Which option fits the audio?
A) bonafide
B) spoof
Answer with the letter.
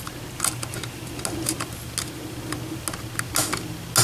A